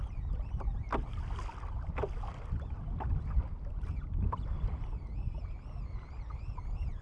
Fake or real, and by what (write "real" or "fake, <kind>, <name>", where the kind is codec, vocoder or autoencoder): real